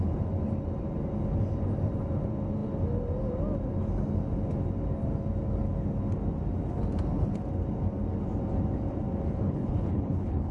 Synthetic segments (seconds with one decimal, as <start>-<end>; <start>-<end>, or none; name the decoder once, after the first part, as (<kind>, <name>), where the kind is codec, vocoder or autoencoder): 9.4-10.5 (codec, HILCodec)